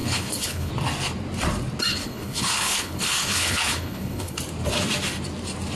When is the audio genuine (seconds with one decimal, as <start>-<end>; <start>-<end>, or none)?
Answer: 0.7-1.9; 4.4-5.8